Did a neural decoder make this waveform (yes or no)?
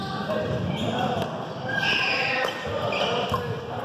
no